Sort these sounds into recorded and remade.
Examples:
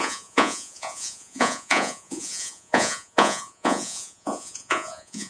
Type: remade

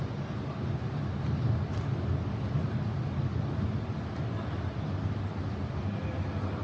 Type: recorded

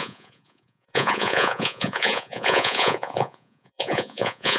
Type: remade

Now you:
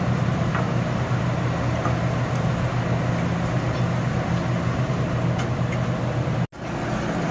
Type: recorded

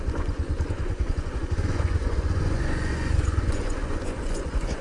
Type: remade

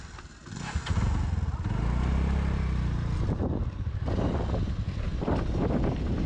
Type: recorded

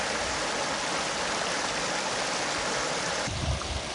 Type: recorded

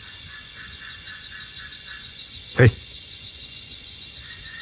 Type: remade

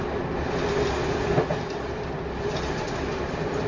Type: recorded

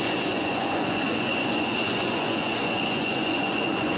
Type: remade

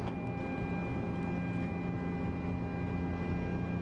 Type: recorded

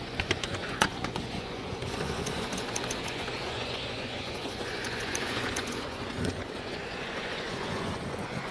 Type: remade